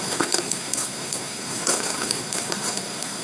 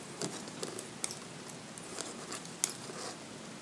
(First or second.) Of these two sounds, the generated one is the first